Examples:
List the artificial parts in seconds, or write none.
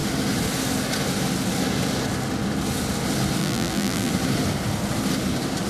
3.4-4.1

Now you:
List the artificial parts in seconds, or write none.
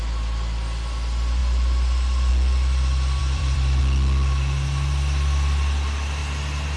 3.2-3.8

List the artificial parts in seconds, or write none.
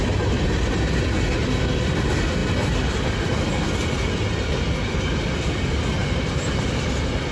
6.0-6.7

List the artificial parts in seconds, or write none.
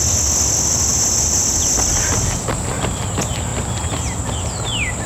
none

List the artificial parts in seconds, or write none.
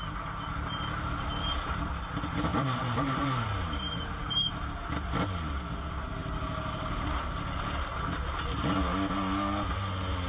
2.5-4.6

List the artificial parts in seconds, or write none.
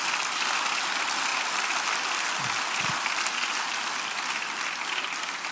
1.3-2.0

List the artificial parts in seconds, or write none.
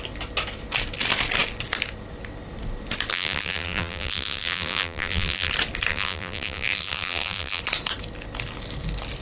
3.1-5.5; 5.9-7.6